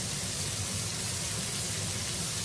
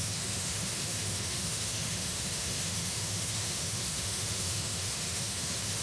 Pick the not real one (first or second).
second